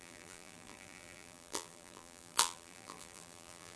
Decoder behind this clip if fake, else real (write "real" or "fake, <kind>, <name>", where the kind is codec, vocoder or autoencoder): fake, vocoder, BigVGAN v2